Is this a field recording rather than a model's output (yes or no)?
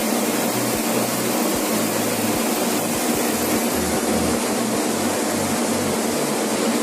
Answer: yes